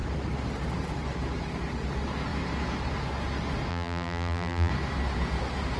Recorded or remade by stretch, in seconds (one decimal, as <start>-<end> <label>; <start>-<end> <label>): 0.0-3.7 recorded; 3.7-4.7 remade; 4.7-5.8 recorded